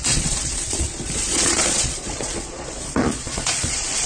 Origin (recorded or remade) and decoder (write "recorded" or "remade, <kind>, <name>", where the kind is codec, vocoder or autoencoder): remade, vocoder, Vocos